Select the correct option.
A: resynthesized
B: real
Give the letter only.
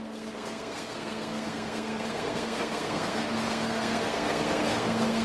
A